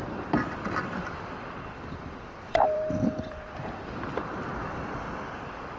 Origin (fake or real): fake